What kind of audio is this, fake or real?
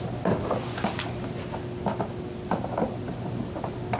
real